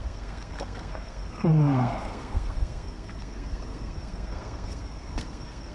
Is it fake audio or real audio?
fake